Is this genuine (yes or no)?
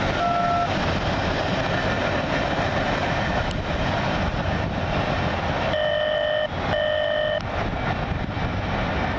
yes